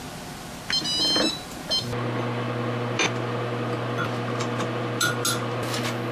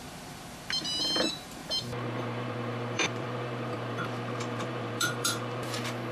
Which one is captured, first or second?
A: first